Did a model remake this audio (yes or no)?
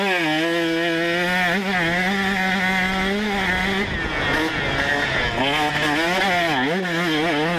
no